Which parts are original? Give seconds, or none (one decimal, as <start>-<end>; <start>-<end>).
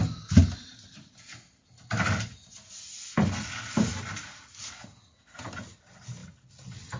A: 0.0-7.0